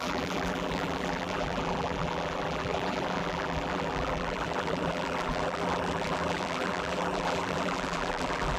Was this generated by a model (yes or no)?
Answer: yes